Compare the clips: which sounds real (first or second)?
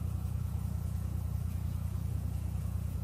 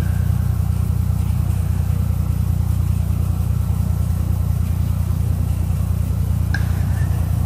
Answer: second